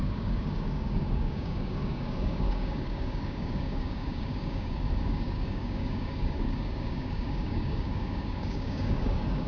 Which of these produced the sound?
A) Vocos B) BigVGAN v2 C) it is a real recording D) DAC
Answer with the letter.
D